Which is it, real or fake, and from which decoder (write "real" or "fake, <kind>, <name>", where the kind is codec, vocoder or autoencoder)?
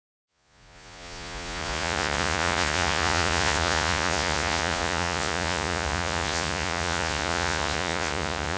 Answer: fake, vocoder, Vocos